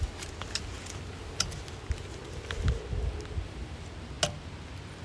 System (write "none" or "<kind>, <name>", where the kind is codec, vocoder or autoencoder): none